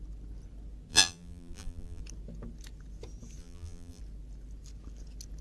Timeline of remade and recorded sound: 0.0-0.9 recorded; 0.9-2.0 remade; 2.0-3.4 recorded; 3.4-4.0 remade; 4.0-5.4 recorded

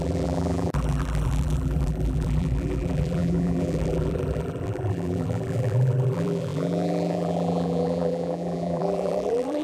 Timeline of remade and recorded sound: 0.0-9.6 remade

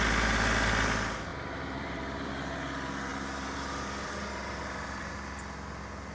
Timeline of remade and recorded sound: 0.0-1.3 recorded; 1.3-2.3 remade; 2.3-3.1 recorded; 3.1-5.1 remade; 5.1-6.1 recorded

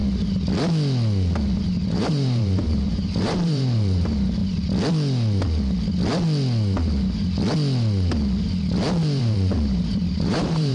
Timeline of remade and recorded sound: 0.0-1.6 recorded; 1.6-4.4 remade; 4.4-9.2 recorded; 9.2-10.7 remade

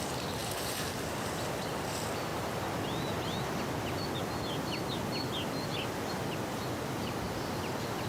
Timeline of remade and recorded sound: 0.0-8.1 recorded